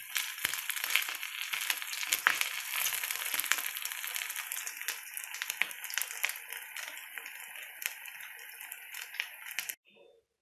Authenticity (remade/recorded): recorded